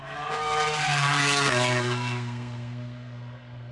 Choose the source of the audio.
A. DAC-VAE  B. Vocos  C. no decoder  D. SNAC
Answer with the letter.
D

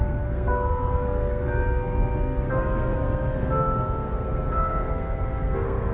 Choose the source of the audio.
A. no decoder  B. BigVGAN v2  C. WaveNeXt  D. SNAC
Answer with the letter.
D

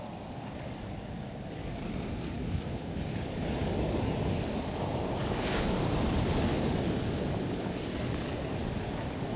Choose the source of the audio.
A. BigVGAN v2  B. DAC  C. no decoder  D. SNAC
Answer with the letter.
B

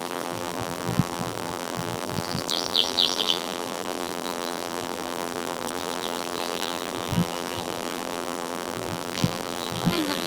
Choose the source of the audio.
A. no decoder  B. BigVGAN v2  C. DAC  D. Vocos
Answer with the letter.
B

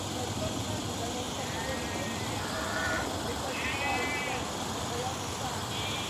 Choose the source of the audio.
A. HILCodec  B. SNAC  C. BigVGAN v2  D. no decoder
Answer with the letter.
C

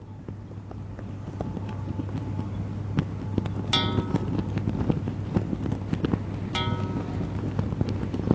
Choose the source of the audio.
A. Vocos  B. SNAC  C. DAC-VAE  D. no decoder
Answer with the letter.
D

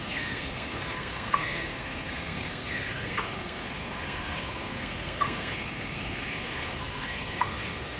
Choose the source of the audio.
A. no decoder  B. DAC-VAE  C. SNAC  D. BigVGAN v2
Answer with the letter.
C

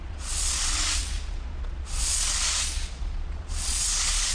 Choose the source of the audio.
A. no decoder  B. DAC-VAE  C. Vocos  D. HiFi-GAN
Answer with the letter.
C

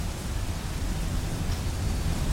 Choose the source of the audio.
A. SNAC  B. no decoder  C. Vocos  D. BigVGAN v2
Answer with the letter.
B